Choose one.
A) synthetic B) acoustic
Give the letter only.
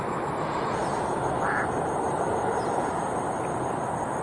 B